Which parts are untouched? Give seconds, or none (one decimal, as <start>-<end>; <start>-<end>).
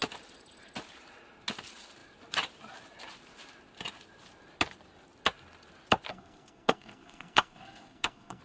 0.0-6.1